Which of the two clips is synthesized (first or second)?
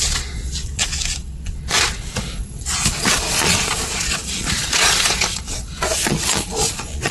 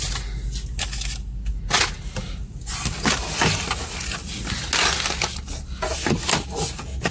first